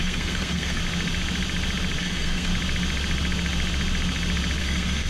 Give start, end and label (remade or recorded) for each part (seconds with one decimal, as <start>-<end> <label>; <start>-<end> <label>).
0.0-0.8 remade; 0.8-2.0 recorded; 2.0-2.5 remade; 2.5-4.6 recorded; 4.6-5.1 remade